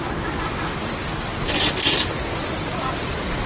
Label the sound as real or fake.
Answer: real